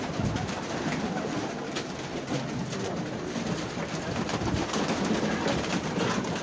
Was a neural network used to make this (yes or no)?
no